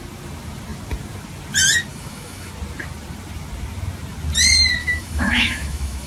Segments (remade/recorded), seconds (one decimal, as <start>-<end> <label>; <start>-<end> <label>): 0.0-1.9 recorded; 1.9-2.5 remade; 2.5-4.8 recorded; 4.8-6.1 remade